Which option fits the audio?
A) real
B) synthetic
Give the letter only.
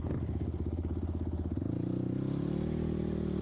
A